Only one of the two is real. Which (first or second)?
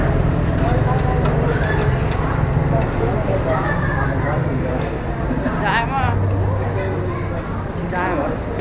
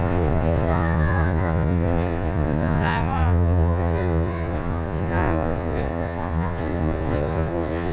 first